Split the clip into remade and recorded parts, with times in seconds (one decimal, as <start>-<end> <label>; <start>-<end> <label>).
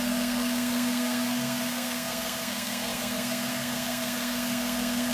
0.0-5.1 remade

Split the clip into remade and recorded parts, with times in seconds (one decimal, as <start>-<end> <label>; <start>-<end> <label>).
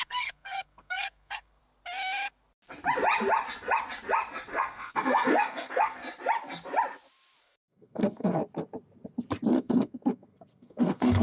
0.0-1.6 remade; 1.6-4.5 recorded; 4.5-6.0 remade; 6.0-7.4 recorded; 7.4-8.4 remade; 8.4-9.5 recorded; 9.5-11.2 remade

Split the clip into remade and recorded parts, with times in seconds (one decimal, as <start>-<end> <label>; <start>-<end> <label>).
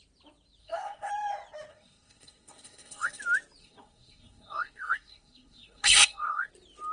0.0-0.6 recorded; 0.6-1.1 remade; 1.1-1.7 recorded; 1.7-3.2 remade; 3.2-3.6 recorded; 3.6-6.5 remade; 6.5-6.9 recorded